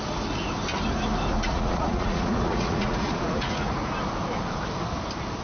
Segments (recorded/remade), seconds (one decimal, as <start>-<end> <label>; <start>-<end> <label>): 0.0-1.3 recorded; 1.3-3.9 remade; 3.9-5.4 recorded

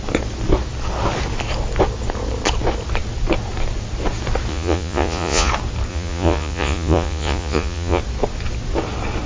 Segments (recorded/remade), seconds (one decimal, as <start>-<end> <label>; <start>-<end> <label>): 0.0-4.5 recorded; 4.5-5.5 remade; 5.5-5.9 recorded; 5.9-8.0 remade; 8.0-9.3 recorded

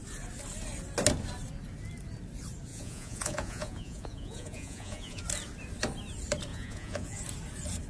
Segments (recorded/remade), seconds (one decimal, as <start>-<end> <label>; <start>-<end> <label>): 0.0-2.7 recorded; 2.7-5.2 remade; 5.2-6.5 recorded; 6.5-7.2 remade; 7.2-7.9 recorded

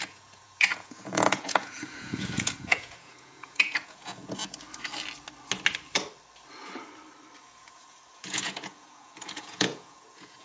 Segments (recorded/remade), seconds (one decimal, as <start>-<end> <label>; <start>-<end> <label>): 0.0-4.4 remade; 4.4-7.4 recorded; 7.4-10.4 remade

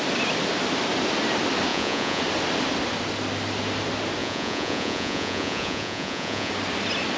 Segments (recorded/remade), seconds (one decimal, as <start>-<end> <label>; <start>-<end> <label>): 0.0-1.7 recorded; 1.7-2.2 remade; 2.2-4.2 recorded; 4.2-6.5 remade; 6.5-7.2 recorded

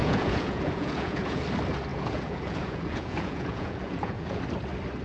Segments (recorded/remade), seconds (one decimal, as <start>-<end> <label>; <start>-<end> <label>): 0.0-1.4 remade; 1.4-1.9 recorded; 1.9-4.4 remade; 4.4-5.0 recorded